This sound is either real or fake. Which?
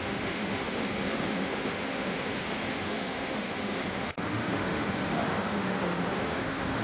fake